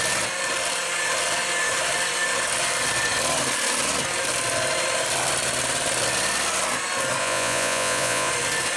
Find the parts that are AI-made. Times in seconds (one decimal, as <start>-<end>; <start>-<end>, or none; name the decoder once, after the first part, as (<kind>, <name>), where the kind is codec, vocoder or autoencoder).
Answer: 7.2-8.3 (vocoder, Vocos)